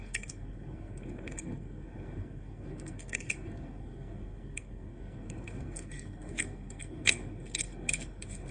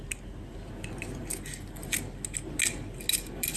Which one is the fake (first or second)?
first